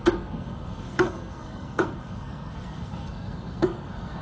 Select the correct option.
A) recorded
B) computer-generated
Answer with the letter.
B